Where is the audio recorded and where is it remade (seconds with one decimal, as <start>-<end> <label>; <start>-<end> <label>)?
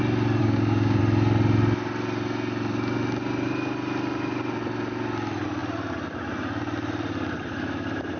0.0-0.4 recorded; 0.4-1.0 remade; 1.0-8.2 recorded